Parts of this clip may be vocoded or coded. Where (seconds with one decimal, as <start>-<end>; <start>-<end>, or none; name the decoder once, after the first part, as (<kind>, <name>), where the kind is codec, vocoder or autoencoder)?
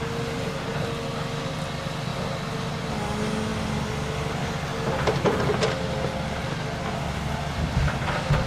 none